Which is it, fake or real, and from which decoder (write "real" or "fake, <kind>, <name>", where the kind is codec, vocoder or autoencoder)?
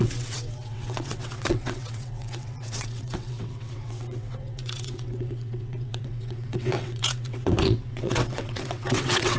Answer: fake, vocoder, WaveNeXt